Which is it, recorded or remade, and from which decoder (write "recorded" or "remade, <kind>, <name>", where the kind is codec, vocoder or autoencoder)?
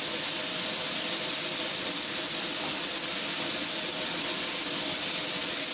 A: recorded